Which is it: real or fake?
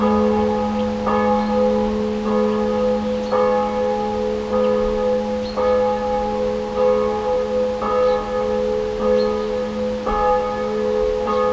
real